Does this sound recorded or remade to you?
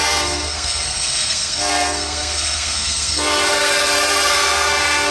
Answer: remade